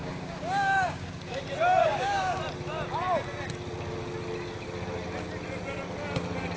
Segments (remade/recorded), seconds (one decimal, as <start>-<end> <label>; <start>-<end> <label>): 0.0-1.4 remade; 1.4-1.8 recorded; 1.8-2.4 remade; 2.4-6.6 recorded

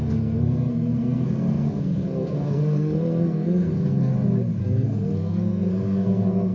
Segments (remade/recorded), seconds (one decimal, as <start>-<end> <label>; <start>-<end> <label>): 0.0-4.1 remade; 4.1-4.6 recorded; 4.6-6.5 remade